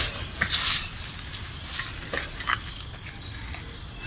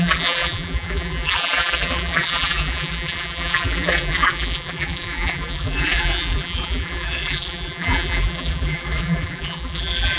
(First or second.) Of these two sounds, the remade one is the second